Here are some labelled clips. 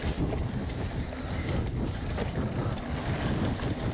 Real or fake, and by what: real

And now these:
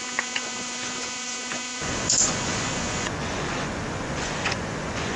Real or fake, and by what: fake, vocoder, Vocos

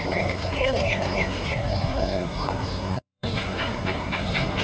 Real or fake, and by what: fake, codec, SNAC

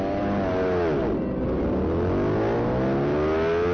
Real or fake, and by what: real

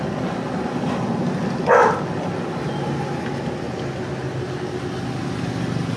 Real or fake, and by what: real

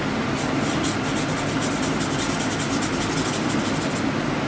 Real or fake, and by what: real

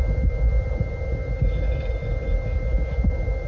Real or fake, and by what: real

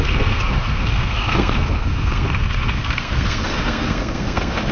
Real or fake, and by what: fake, codec, SNAC